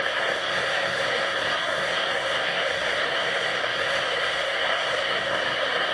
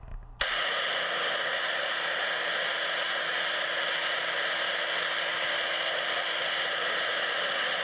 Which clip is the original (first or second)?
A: second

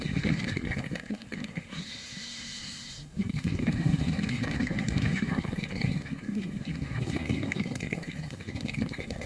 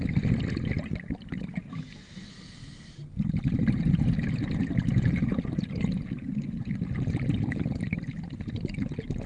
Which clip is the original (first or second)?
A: second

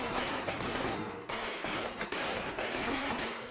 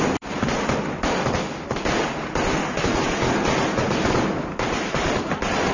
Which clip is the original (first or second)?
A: second